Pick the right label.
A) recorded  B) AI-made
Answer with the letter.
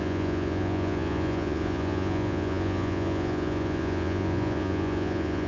B